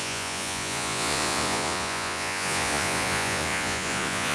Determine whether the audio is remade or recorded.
remade